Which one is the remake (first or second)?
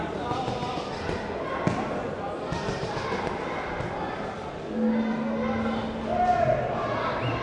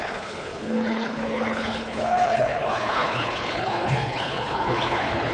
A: second